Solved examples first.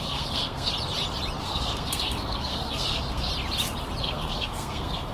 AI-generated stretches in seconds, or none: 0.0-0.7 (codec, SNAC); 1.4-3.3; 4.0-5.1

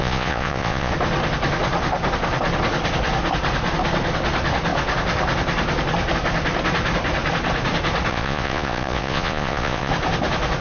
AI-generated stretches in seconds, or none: 0.0-0.9 (vocoder, Vocos); 8.1-9.9

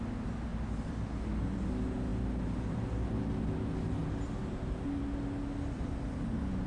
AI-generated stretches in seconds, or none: none

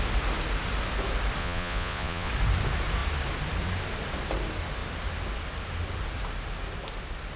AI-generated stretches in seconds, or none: 1.4-2.3 (vocoder, Vocos)